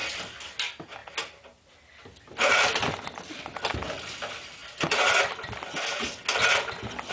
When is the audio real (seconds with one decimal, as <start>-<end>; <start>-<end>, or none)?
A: 0.0-7.1